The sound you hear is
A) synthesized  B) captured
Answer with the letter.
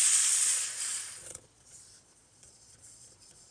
A